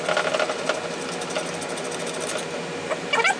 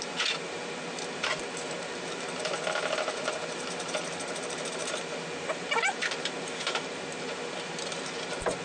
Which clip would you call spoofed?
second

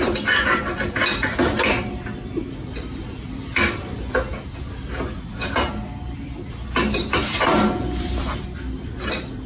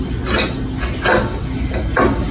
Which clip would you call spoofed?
first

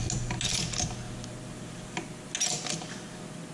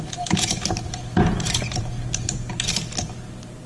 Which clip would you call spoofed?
second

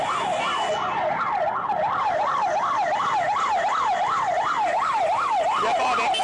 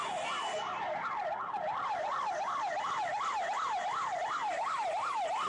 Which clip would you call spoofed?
second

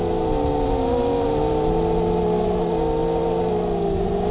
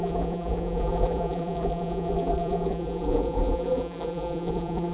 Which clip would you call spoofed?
second